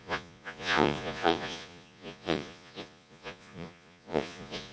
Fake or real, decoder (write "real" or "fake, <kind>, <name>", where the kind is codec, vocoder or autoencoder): fake, vocoder, Vocos